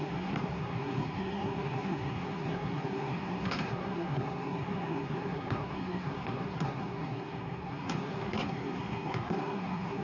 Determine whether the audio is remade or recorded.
remade